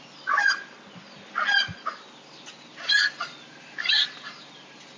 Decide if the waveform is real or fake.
real